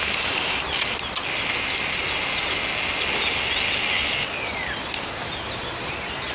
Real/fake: real